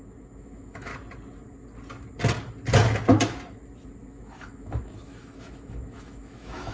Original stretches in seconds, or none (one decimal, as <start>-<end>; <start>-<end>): 0.9-4.1

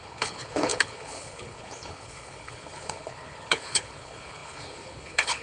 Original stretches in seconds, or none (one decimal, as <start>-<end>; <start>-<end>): none

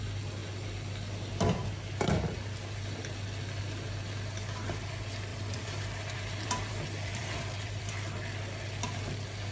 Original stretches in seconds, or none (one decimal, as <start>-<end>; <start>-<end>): 0.0-5.3; 7.9-9.5

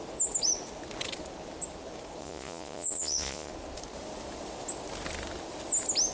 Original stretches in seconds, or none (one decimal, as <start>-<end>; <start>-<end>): 0.0-2.2; 3.5-6.1